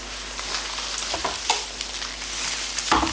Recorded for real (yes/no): yes